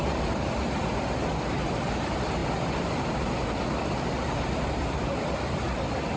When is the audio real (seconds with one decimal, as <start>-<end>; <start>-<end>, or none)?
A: 0.0-6.2